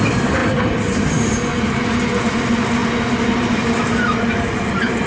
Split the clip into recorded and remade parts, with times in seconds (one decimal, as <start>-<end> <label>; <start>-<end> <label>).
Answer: 0.0-5.1 recorded